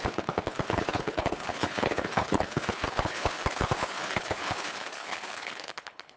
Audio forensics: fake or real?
fake